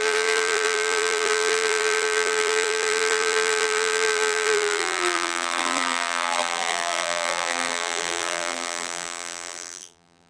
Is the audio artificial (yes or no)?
yes